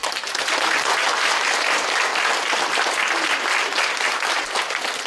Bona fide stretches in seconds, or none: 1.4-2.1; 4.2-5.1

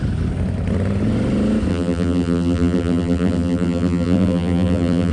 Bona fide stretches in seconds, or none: 0.0-1.7

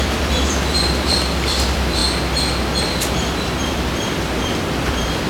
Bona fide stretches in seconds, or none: 2.0-2.8